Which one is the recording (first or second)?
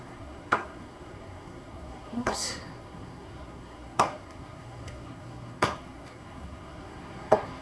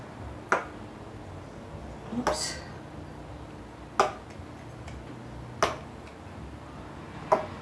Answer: second